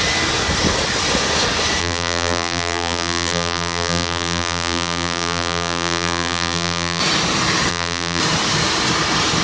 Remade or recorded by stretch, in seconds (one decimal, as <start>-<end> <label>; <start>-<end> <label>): 0.0-1.8 recorded; 1.8-7.0 remade; 7.0-7.7 recorded; 7.7-8.2 remade; 8.2-9.4 recorded